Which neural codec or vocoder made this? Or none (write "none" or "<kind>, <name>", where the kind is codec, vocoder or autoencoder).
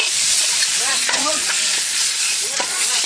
vocoder, Vocos